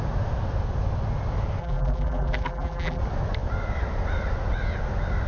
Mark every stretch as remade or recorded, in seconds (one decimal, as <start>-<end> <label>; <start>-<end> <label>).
0.0-1.6 recorded; 1.6-3.0 remade; 3.0-5.3 recorded